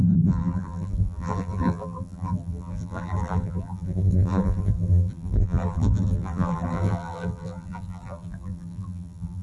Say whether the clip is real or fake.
fake